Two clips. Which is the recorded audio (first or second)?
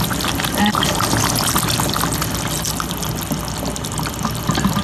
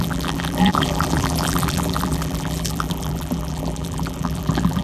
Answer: first